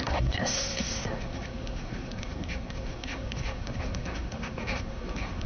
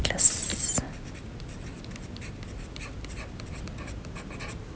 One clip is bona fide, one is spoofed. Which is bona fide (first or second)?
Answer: second